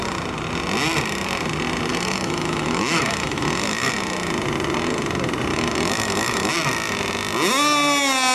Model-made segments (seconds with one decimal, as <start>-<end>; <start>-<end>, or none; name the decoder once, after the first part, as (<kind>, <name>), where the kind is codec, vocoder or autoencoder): 1.9-3.9 (autoencoder, DAC-VAE); 5.5-6.5